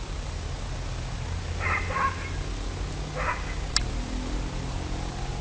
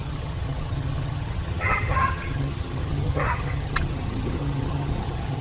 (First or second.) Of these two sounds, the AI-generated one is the second